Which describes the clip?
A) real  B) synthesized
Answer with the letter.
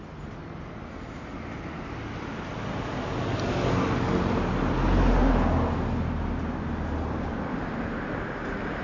A